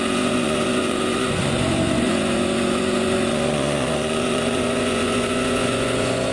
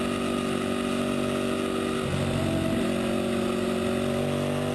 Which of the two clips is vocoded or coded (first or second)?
first